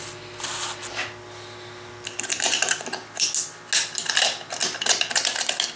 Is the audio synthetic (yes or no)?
no